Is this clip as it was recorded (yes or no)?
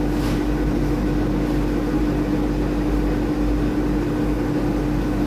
yes